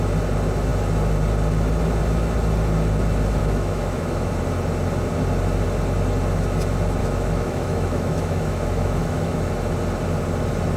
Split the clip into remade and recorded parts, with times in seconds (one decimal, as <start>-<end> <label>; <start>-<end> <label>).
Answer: 0.0-3.4 recorded; 3.4-4.3 remade; 4.3-7.0 recorded; 7.0-9.5 remade; 9.5-10.8 recorded